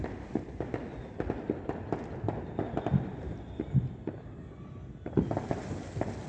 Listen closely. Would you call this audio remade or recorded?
recorded